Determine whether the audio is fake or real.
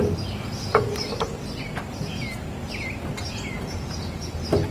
real